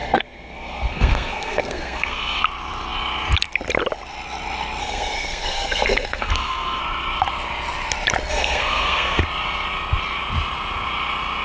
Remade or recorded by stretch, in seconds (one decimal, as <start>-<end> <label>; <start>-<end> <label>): 0.0-2.4 remade; 2.4-4.8 recorded; 4.8-6.8 remade; 6.8-8.3 recorded; 8.3-9.2 remade; 9.2-11.4 recorded